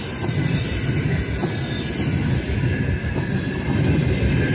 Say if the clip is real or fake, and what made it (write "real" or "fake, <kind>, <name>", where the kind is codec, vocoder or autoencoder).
real